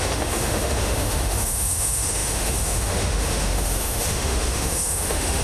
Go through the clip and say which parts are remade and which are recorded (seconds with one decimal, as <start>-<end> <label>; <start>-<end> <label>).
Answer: 0.0-5.4 remade